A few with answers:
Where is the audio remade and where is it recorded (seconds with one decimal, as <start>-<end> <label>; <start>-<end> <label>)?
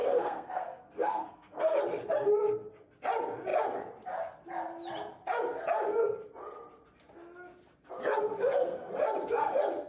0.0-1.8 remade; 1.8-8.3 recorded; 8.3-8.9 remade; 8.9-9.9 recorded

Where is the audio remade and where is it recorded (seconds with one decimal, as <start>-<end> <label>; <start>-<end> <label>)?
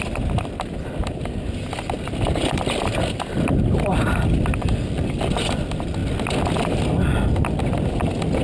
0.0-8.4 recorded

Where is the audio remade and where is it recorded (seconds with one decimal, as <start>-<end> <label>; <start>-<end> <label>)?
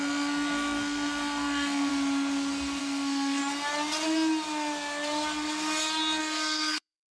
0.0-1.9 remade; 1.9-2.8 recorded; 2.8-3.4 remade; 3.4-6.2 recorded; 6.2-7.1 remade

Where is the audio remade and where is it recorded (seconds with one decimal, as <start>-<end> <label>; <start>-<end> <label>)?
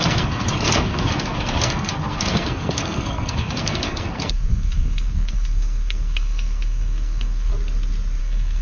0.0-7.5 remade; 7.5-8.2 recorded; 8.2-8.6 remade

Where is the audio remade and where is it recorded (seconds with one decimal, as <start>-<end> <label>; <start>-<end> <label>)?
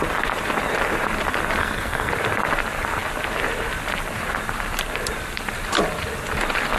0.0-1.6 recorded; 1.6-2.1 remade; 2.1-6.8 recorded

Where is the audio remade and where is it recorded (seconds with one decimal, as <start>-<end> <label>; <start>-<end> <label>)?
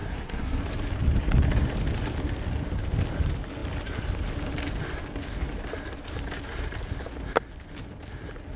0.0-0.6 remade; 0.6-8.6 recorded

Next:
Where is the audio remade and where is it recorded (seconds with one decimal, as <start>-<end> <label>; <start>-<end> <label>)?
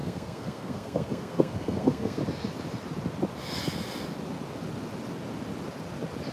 0.0-2.2 remade; 2.2-6.3 recorded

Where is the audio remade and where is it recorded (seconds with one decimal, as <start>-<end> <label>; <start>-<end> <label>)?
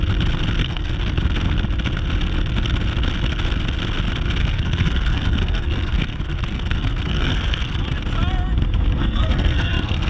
0.0-0.6 recorded; 0.6-1.2 remade; 1.2-4.4 recorded; 4.4-7.8 remade; 7.8-9.0 recorded; 9.0-10.1 remade